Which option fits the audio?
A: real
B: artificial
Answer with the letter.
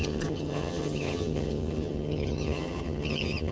B